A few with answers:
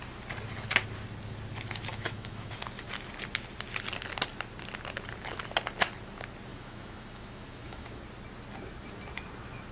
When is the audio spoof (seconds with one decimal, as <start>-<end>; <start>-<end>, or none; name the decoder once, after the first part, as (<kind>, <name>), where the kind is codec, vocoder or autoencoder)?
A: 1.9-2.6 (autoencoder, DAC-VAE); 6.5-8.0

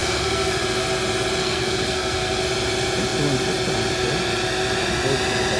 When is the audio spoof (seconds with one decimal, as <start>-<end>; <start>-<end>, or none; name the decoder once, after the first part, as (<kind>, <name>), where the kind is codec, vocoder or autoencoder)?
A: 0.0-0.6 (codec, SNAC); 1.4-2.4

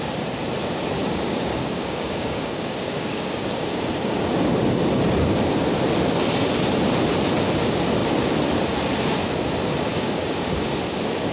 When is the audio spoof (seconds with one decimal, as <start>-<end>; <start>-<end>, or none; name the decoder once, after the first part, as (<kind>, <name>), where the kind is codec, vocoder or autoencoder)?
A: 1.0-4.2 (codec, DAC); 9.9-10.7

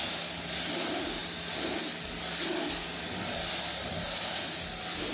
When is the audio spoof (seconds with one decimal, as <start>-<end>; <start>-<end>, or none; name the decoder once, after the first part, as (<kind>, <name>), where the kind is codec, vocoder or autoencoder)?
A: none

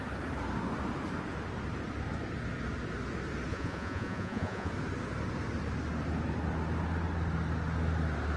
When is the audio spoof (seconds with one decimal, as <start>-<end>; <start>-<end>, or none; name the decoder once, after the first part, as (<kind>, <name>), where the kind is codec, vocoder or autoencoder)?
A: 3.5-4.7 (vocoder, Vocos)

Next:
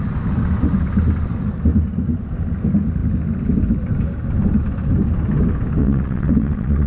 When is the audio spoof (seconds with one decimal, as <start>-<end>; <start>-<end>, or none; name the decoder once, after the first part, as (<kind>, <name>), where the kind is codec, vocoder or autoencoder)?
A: 5.8-6.9 (vocoder, WaveNeXt)

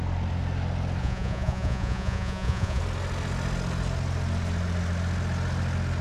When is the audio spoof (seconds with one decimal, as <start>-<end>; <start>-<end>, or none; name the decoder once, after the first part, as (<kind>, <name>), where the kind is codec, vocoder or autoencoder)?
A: 1.0-2.8 (vocoder, Vocos)

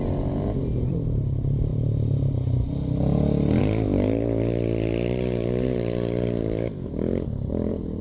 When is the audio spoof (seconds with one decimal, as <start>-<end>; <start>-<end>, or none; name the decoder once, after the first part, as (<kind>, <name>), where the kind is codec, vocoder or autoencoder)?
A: 0.0-1.7 (vocoder, BigVGAN v2); 3.6-8.0